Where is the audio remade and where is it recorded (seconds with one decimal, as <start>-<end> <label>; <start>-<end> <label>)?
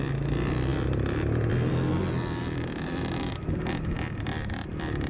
0.0-5.1 remade